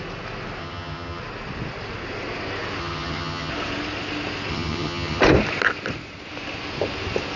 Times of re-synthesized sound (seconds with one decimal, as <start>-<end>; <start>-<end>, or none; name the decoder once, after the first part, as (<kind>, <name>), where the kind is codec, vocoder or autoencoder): 0.6-1.2 (vocoder, HiFi-GAN); 2.8-3.5; 4.5-5.2